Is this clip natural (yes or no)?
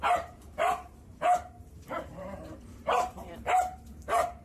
no